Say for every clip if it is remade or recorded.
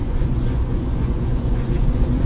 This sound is remade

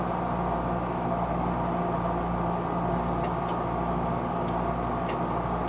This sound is recorded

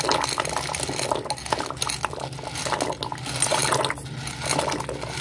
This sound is recorded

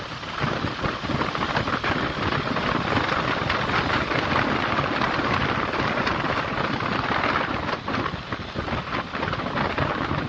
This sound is recorded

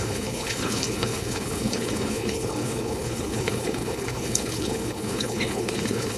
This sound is remade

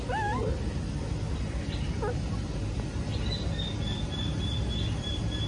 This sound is recorded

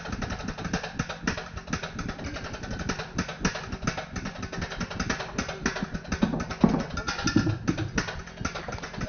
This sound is recorded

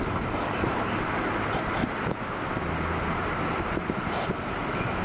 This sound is remade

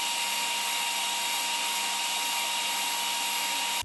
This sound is recorded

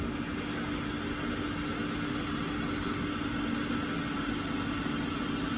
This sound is recorded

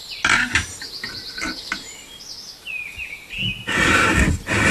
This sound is recorded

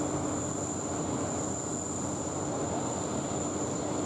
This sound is recorded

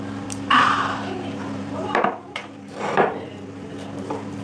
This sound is remade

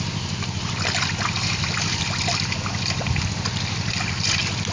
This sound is recorded